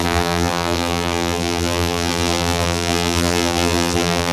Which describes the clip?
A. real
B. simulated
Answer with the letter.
B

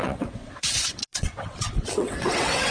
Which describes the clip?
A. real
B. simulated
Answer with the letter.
B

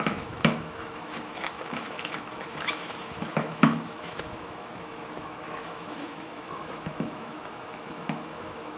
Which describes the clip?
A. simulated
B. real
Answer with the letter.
A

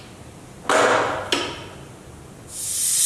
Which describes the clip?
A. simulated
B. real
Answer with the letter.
B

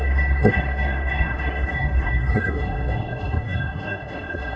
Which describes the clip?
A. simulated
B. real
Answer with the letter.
A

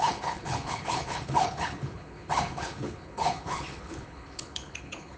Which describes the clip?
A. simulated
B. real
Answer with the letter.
A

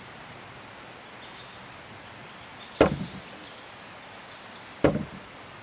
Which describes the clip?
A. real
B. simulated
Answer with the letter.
A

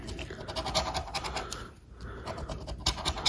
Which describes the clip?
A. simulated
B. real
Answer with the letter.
B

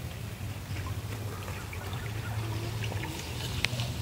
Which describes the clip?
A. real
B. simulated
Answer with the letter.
A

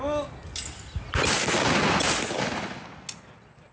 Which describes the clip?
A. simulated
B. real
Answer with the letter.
B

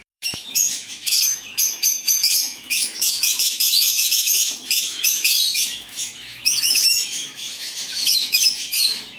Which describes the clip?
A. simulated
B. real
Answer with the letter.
A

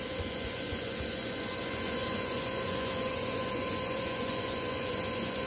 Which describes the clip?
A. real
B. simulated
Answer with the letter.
B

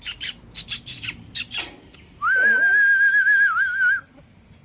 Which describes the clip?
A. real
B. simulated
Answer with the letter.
A